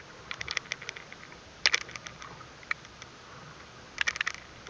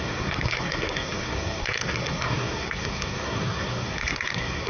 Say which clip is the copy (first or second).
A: second